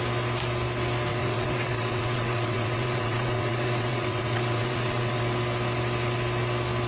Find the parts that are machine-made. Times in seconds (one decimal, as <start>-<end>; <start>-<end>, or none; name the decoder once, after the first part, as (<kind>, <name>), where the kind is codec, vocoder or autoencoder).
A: 1.1-5.2 (vocoder, WaveNeXt)